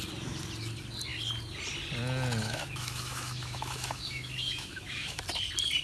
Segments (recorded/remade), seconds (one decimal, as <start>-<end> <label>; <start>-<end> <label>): 0.0-2.4 recorded; 2.4-5.2 remade; 5.2-5.8 recorded